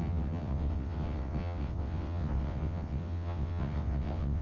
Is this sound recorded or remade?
remade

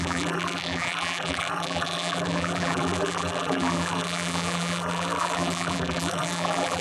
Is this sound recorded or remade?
remade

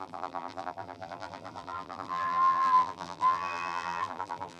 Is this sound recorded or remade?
remade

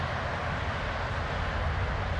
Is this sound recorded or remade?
recorded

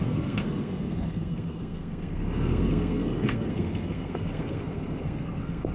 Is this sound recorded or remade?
remade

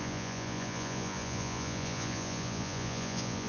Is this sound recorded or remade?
remade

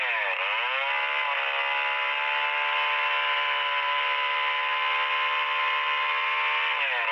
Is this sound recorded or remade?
recorded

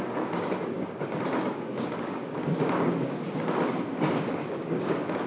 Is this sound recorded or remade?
remade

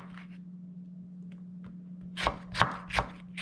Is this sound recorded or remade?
recorded